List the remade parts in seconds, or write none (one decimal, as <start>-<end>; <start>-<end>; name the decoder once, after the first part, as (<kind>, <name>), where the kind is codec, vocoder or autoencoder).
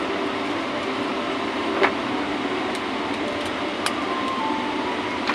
none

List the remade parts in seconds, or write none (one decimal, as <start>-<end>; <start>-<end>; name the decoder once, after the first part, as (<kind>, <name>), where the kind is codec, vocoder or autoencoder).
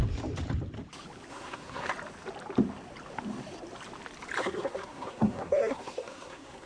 1.3-1.9 (codec, SNAC); 4.4-6.7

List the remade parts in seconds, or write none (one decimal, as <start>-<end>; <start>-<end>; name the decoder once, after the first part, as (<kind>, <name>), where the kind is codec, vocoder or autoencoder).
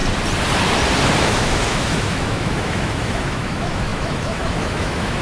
1.2-5.2 (autoencoder, DAC-VAE)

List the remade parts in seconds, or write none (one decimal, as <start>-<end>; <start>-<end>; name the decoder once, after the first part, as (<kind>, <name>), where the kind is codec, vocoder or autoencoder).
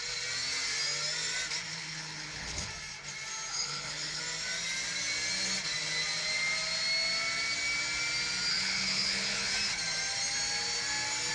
1.7-2.7 (codec, HILCodec); 3.5-4.2; 8.5-9.5